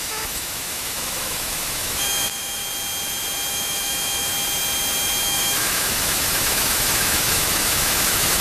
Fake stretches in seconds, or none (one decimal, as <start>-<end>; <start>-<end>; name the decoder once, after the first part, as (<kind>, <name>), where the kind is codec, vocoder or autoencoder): 0.0-2.6 (autoencoder, DAC-VAE); 3.5-4.3; 5.2-8.4